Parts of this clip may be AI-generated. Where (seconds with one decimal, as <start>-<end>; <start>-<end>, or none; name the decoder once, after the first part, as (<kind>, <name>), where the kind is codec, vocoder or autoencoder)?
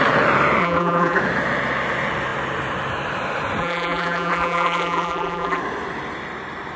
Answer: 0.6-1.2 (vocoder, BigVGAN v2); 3.6-5.6